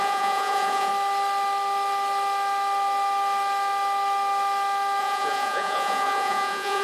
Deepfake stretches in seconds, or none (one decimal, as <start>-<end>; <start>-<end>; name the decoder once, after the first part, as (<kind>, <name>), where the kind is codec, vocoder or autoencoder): 0.0-0.9 (vocoder, Vocos); 5.0-6.8